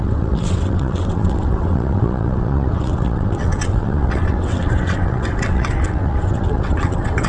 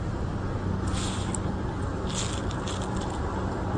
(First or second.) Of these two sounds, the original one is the second